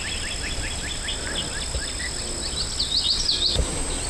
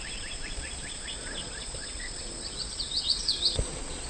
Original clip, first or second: first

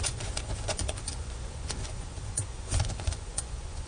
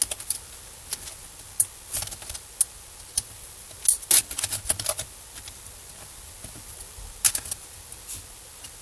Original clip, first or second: second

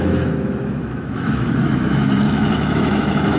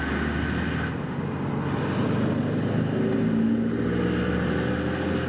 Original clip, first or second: second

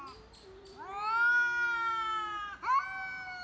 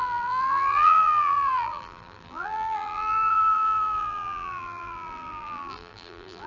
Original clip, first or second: first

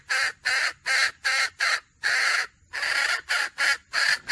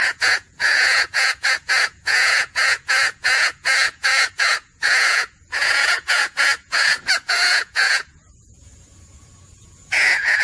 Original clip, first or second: first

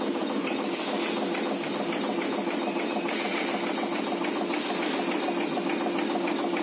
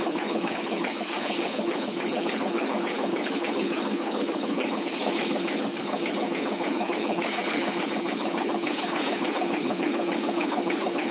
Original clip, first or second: first